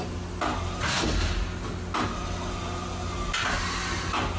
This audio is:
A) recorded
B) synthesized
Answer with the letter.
A